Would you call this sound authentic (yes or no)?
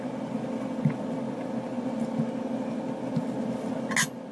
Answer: yes